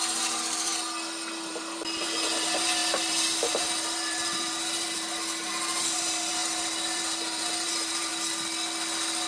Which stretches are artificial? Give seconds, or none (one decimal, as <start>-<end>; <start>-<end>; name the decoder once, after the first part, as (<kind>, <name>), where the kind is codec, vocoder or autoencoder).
0.0-0.7 (vocoder, BigVGAN v2); 1.5-8.1